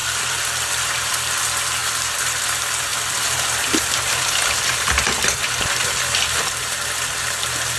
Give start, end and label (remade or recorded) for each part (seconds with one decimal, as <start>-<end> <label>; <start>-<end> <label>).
0.0-1.1 remade; 1.1-1.8 recorded; 1.8-2.4 remade; 2.4-2.9 recorded; 2.9-7.8 remade